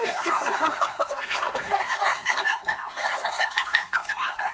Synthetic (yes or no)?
yes